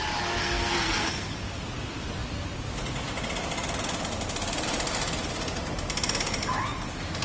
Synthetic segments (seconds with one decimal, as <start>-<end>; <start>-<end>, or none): 0.4-1.3